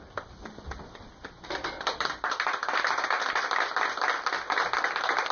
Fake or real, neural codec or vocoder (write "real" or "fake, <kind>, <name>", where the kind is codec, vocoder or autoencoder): real